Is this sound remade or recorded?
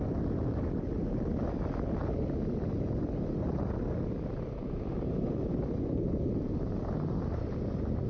recorded